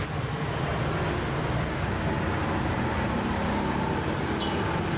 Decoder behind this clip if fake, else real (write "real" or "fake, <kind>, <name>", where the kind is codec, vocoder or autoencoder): real